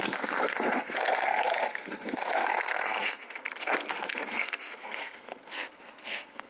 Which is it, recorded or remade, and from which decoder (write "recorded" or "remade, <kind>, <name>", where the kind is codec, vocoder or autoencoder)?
remade, codec, SNAC